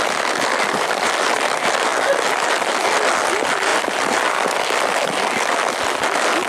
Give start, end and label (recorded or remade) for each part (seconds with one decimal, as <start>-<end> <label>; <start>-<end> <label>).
0.0-3.7 recorded; 3.7-4.6 remade; 4.6-6.5 recorded

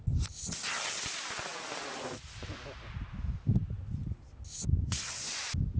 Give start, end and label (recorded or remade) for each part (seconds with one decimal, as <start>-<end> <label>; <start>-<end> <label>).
0.0-5.8 recorded

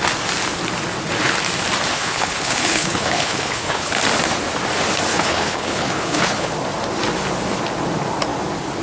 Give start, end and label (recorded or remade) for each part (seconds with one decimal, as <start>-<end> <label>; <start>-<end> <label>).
0.0-1.9 recorded; 1.9-3.9 remade; 3.9-5.1 recorded; 5.1-6.5 remade; 6.5-8.8 recorded

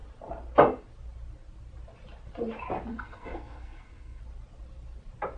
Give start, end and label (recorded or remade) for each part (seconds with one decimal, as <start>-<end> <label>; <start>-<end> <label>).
0.0-2.9 recorded; 2.9-4.2 remade; 4.2-5.4 recorded

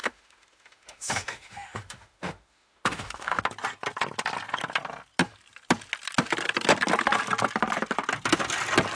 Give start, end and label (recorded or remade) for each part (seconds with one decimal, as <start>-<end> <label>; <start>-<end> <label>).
0.0-3.4 remade; 3.4-8.9 recorded

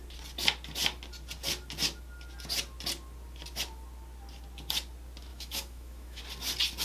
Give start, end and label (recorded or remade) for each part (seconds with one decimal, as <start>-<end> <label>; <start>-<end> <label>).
0.0-5.3 recorded; 5.3-6.2 remade; 6.2-6.8 recorded

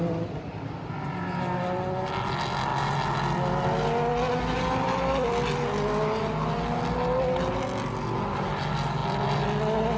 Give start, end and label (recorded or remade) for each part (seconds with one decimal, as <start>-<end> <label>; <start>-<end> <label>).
0.0-10.0 recorded

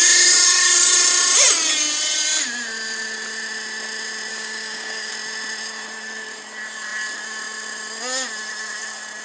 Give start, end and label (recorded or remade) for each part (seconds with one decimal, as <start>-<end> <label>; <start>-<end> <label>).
0.0-4.3 recorded; 4.3-5.1 remade; 5.1-9.2 recorded